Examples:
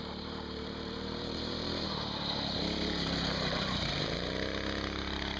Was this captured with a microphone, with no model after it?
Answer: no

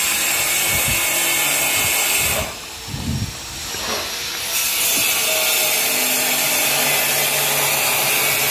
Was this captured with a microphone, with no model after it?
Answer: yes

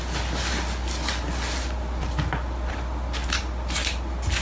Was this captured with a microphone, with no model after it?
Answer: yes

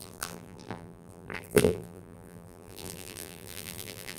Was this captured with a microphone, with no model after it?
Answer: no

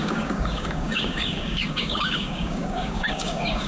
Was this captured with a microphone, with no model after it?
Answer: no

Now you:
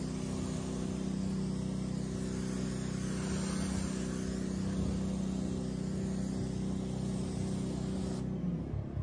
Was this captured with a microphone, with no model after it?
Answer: yes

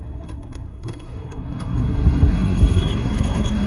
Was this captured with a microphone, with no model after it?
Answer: no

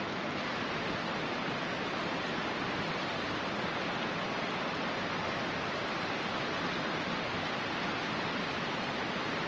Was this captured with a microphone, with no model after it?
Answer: yes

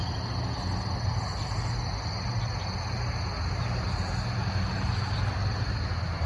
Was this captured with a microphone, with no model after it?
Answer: yes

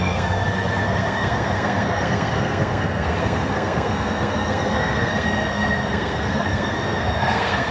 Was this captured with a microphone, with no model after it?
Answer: no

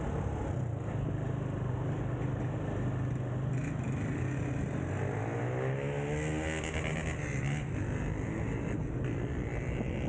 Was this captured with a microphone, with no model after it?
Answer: yes